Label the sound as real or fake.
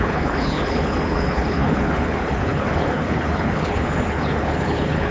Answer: fake